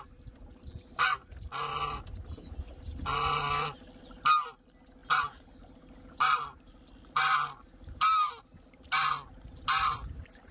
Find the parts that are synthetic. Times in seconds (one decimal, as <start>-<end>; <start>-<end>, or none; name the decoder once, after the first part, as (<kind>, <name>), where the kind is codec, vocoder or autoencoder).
none